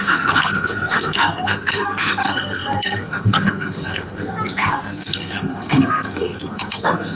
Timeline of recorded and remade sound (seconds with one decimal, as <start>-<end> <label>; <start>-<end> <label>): 0.0-7.2 remade